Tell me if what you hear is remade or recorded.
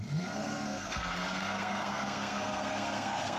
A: remade